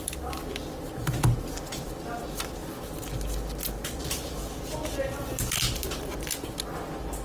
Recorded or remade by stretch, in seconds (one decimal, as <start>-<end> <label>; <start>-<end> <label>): 0.0-7.2 recorded